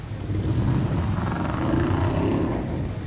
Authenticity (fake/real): real